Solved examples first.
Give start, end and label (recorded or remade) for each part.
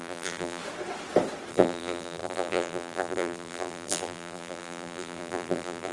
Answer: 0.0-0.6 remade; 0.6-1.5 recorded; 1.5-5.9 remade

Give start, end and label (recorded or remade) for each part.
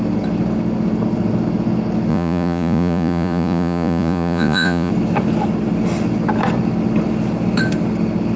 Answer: 0.0-2.1 recorded; 2.1-4.9 remade; 4.9-8.4 recorded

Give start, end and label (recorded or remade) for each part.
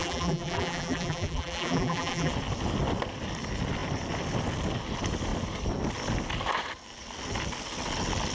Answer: 0.0-2.3 remade; 2.3-8.3 recorded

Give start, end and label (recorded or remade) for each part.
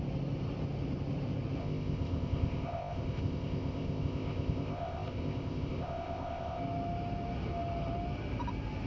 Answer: 0.0-1.6 recorded; 1.6-6.6 remade; 6.6-8.9 recorded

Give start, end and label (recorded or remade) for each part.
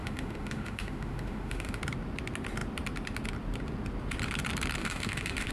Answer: 0.0-1.8 remade; 1.8-4.8 recorded; 4.8-5.5 remade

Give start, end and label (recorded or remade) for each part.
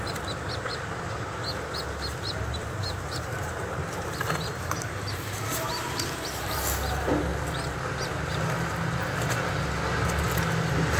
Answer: 0.0-2.8 recorded; 2.8-6.6 remade; 6.6-11.0 recorded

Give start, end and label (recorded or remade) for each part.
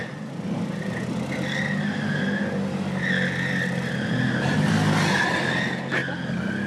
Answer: 0.0-6.7 recorded